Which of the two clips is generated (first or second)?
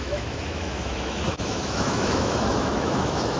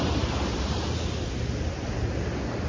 first